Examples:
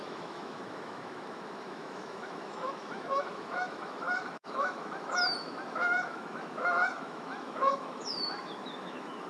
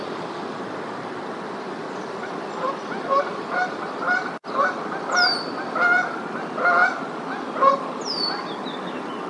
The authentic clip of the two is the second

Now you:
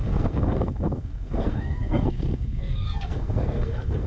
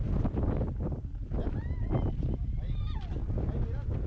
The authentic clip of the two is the second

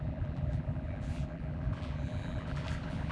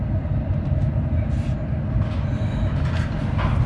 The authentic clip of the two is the second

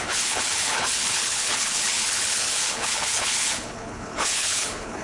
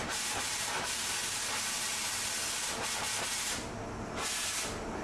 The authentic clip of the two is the second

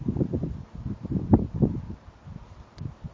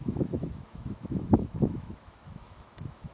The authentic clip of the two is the first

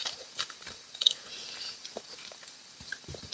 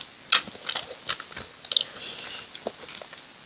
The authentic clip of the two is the second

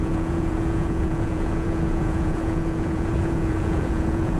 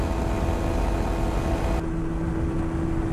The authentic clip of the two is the second